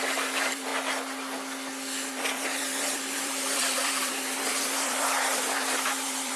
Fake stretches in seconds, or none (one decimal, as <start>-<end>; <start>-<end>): 0.0-0.7; 2.1-6.4